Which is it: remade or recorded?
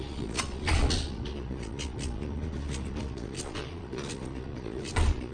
remade